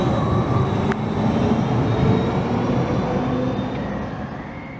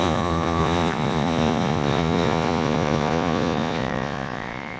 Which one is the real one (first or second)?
first